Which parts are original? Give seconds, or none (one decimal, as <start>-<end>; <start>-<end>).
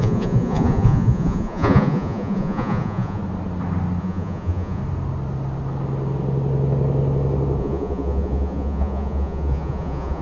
3.2-4.0; 4.8-7.6